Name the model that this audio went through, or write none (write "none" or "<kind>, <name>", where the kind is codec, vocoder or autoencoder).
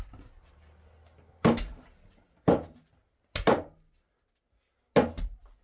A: none